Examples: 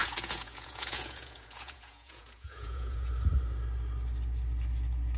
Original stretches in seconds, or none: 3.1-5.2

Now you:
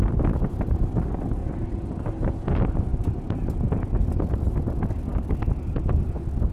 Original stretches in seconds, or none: 0.0-1.4; 1.9-5.1; 6.0-6.5

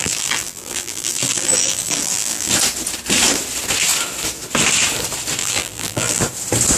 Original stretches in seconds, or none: 2.5-5.4; 6.2-6.8

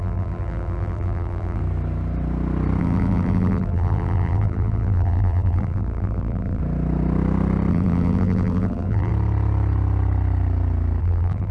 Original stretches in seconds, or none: 1.6-2.8; 6.6-7.7; 9.1-11.0

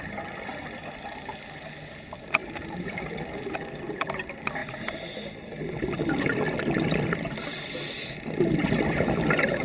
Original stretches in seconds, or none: 0.0-9.6

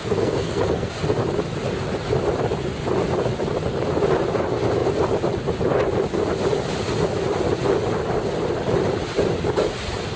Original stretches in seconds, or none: 0.9-10.2